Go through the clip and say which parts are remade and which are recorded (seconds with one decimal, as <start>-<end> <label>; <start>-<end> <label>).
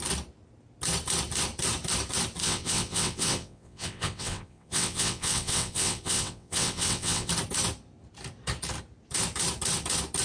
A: 0.0-2.4 recorded; 2.4-7.3 remade; 7.3-10.2 recorded